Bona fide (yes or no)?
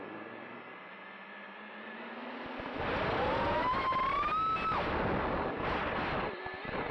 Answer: yes